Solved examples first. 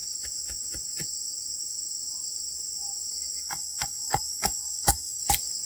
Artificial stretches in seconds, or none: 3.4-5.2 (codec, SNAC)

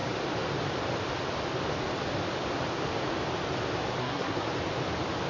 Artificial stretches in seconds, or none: 4.0-4.5 (codec, SNAC)

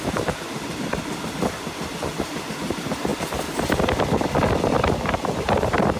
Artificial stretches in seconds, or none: none